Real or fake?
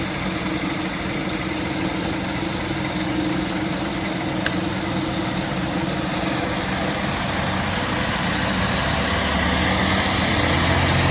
real